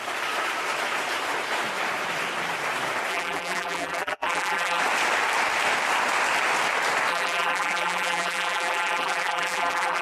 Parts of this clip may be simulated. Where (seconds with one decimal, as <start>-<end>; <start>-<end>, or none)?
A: 3.1-4.8; 7.1-10.0